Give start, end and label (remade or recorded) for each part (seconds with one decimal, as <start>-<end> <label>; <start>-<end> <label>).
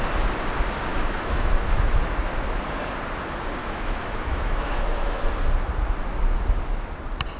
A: 0.0-0.9 recorded; 0.9-1.9 remade; 1.9-3.6 recorded; 3.6-5.2 remade; 5.2-7.4 recorded